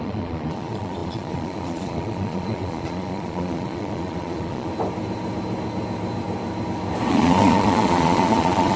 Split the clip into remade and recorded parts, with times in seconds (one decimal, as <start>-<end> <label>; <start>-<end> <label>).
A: 0.0-4.7 remade; 4.7-7.1 recorded; 7.1-8.8 remade